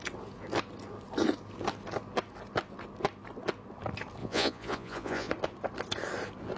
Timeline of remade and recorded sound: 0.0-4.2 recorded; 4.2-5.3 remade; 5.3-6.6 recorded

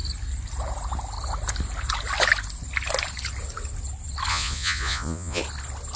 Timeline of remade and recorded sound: 0.0-4.3 recorded; 4.3-5.4 remade; 5.4-6.0 recorded

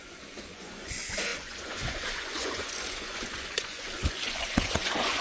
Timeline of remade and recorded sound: 0.0-5.2 remade